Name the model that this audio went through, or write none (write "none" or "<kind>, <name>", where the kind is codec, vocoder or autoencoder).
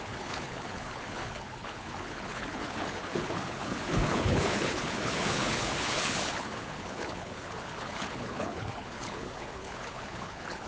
codec, HILCodec